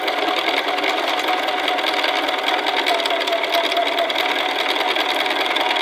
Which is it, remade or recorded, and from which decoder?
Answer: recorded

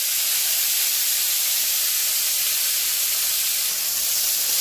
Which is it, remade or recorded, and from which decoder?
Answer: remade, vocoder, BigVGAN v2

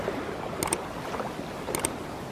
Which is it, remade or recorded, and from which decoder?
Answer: recorded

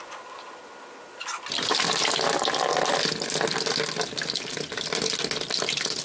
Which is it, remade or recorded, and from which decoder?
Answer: recorded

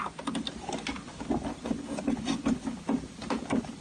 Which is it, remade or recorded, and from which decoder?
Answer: recorded